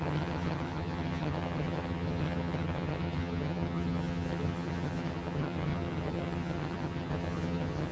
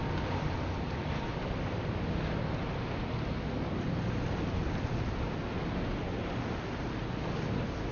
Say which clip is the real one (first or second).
second